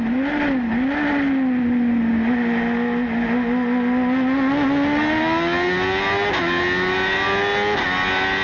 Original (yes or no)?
yes